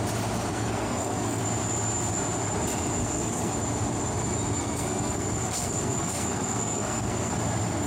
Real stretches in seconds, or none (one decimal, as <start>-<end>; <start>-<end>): 0.0-0.5; 1.4-3.0; 3.5-4.6; 7.3-7.9